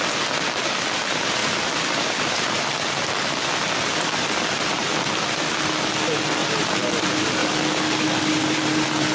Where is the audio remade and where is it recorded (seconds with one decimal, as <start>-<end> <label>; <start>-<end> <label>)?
0.0-1.4 recorded; 1.4-2.3 remade; 2.3-4.8 recorded; 4.8-5.3 remade; 5.3-6.4 recorded; 6.4-6.9 remade; 6.9-9.1 recorded